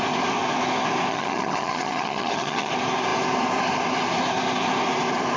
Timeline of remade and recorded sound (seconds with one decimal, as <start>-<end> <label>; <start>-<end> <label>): 0.0-1.1 recorded; 1.1-2.7 remade; 2.7-5.4 recorded